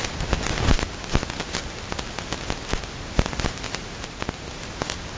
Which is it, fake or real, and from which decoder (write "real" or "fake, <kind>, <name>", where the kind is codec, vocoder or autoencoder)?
real